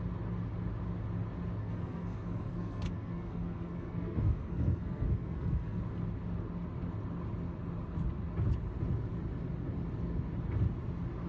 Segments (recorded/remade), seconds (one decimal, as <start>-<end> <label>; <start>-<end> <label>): 0.0-1.6 recorded; 1.6-5.8 remade; 5.8-11.3 recorded